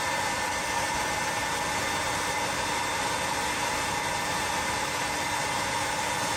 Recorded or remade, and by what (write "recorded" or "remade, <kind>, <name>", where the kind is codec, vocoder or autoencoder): recorded